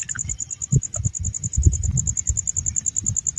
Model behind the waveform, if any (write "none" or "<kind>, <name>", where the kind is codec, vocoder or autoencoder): none